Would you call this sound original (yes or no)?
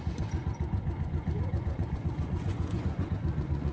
no